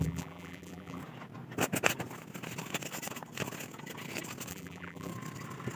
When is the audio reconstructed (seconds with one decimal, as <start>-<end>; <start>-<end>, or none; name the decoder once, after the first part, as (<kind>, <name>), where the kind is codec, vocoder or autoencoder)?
0.0-1.0 (vocoder, BigVGAN v2); 4.5-5.1